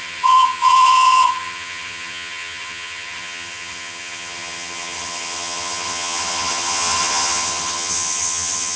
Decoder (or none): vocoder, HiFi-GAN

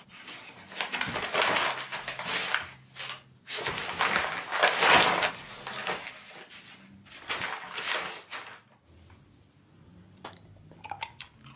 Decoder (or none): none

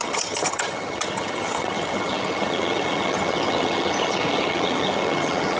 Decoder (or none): vocoder, HiFi-GAN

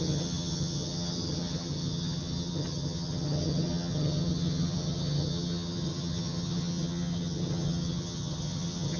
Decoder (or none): vocoder, HiFi-GAN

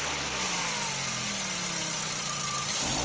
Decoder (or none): none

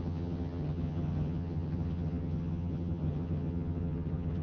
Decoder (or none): vocoder, HiFi-GAN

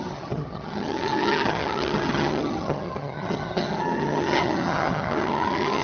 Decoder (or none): vocoder, HiFi-GAN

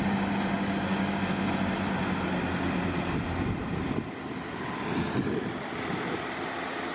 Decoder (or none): none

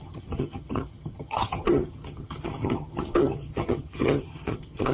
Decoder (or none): vocoder, HiFi-GAN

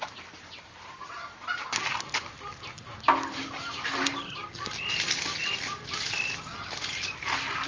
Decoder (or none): none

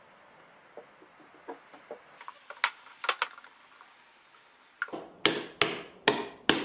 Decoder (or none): none